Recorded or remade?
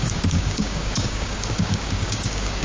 remade